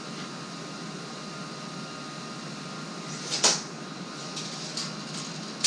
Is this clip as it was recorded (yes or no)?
yes